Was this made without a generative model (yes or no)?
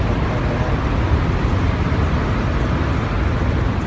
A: yes